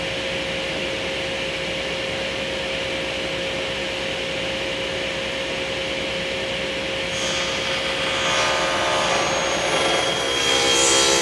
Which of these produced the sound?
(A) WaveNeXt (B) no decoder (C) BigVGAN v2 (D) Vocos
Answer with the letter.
B